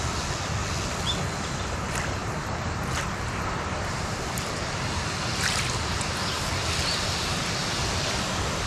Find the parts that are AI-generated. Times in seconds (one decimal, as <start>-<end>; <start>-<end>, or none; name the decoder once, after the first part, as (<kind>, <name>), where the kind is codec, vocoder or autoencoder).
0.0-0.6 (vocoder, BigVGAN v2); 1.4-7.6; 8.1-8.7